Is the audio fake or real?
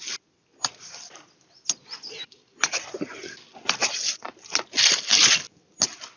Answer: real